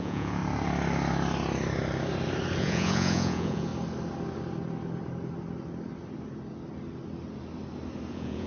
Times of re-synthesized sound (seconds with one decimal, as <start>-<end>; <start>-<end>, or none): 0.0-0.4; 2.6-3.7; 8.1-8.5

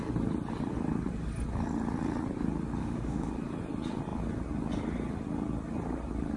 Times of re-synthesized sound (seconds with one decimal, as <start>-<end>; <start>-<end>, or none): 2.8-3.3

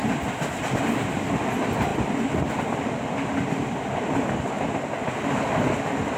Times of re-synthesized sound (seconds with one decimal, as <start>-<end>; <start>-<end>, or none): none

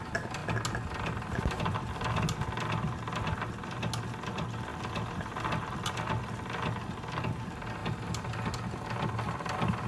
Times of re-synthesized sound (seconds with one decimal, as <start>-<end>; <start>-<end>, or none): 4.7-6.2; 7.8-8.5